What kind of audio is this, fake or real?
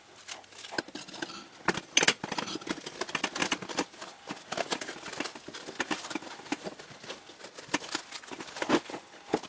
real